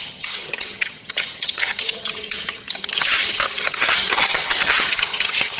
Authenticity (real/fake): fake